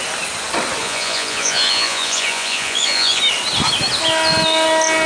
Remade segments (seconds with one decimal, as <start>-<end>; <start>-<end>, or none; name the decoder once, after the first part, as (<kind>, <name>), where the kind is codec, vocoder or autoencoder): 0.8-3.2 (vocoder, Vocos)